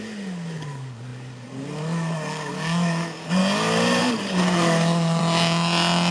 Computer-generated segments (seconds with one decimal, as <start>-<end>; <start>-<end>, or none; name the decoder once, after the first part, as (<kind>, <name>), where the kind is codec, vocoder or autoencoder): 0.0-3.4 (codec, DAC); 4.0-5.2